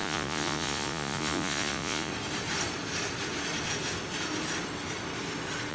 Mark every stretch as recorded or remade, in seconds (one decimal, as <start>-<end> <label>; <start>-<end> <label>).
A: 0.0-2.1 remade; 2.1-5.7 recorded